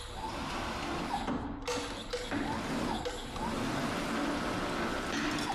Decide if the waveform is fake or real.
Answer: real